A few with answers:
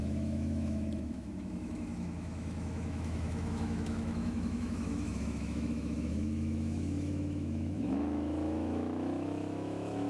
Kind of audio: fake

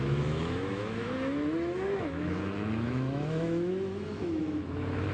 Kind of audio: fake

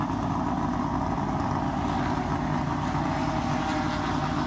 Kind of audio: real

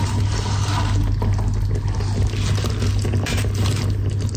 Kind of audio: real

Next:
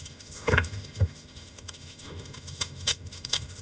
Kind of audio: fake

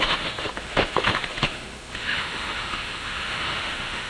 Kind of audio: fake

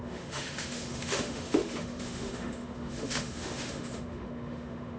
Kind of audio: fake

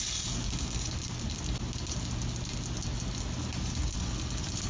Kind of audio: real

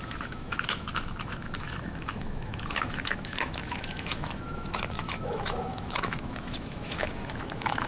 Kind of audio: fake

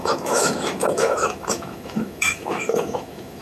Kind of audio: fake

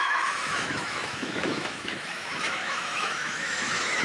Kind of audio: fake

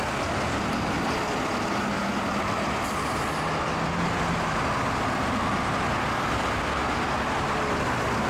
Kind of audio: real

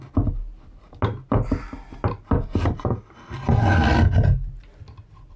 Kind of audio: real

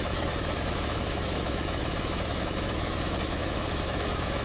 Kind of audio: fake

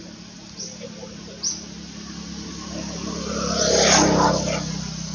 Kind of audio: real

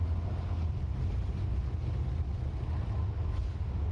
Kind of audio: real